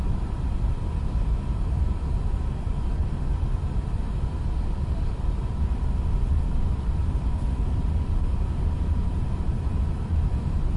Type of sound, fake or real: fake